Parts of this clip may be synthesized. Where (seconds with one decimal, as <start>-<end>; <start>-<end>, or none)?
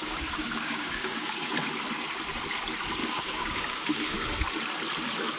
0.0-1.3; 3.0-4.3